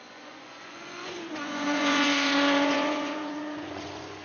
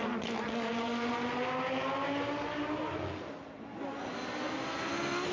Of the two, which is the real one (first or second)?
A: second